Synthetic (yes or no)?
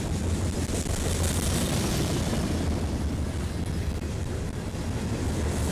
no